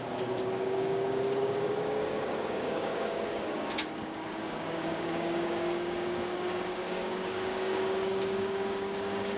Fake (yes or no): yes